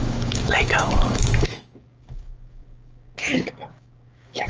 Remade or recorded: remade